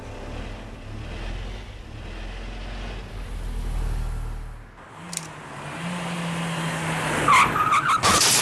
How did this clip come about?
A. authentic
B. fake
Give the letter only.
A